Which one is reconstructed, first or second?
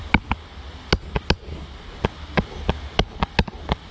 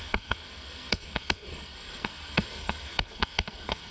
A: second